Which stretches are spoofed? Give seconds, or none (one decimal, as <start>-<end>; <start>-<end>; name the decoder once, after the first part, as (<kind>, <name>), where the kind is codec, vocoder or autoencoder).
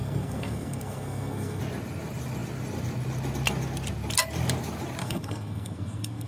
0.0-1.6 (codec, SNAC); 5.0-6.3